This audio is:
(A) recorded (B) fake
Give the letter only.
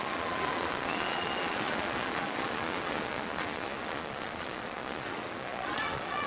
B